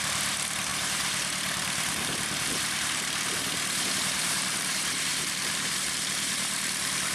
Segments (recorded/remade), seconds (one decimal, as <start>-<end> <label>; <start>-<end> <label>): 0.0-7.1 remade